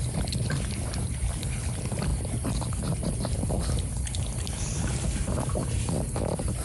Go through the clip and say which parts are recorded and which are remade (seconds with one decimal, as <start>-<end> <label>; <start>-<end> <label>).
0.0-6.6 recorded